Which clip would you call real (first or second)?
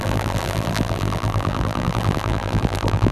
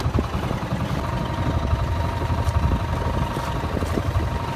second